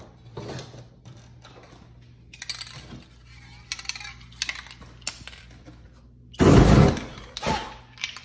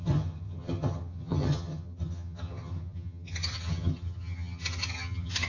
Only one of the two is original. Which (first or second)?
first